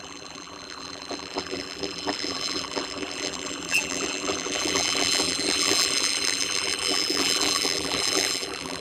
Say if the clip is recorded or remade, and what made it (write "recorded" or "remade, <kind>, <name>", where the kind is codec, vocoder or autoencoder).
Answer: remade, vocoder, BigVGAN v2